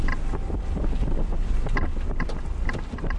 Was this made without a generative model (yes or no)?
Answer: yes